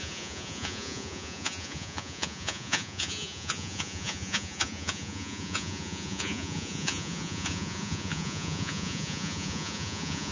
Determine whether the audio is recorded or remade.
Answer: remade